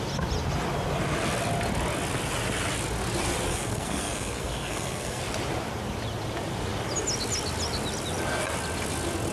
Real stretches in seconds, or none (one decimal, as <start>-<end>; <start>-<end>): 0.0-3.5; 5.2-9.3